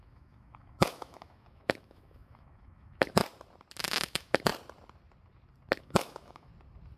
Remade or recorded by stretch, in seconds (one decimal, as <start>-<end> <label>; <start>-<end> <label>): 0.0-3.2 remade; 3.2-3.8 recorded; 3.8-4.5 remade; 4.5-5.8 recorded; 5.8-6.5 remade; 6.5-7.0 recorded